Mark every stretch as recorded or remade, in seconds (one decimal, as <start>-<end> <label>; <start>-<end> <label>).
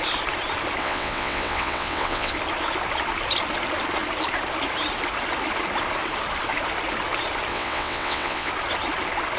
0.0-0.8 recorded; 0.8-2.3 remade; 2.3-7.5 recorded; 7.5-8.5 remade; 8.5-9.4 recorded